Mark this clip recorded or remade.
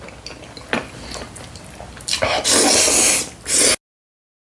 recorded